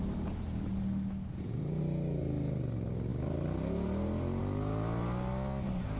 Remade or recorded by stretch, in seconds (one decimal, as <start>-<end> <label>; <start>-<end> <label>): 0.0-1.3 recorded; 1.3-1.8 remade; 1.8-6.0 recorded